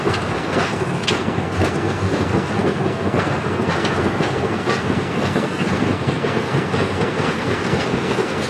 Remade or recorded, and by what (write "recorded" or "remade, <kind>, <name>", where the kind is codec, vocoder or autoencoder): remade, codec, SNAC